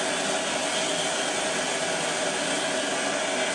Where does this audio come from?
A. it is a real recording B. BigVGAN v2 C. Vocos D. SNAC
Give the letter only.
A